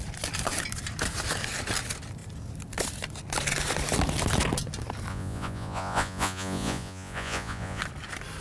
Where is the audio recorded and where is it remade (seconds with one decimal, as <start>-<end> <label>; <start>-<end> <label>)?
0.0-5.1 recorded; 5.1-7.8 remade; 7.8-8.4 recorded